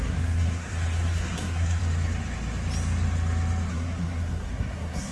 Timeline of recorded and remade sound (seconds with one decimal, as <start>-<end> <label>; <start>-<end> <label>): 0.0-1.8 remade; 1.8-3.7 recorded; 3.7-5.1 remade